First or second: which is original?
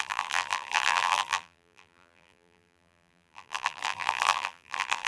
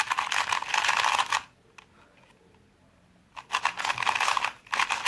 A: second